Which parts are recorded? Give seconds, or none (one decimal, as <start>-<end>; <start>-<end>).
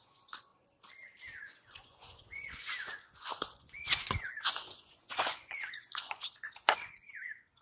0.5-1.4